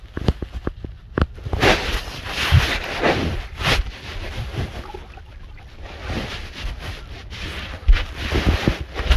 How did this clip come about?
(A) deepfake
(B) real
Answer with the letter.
B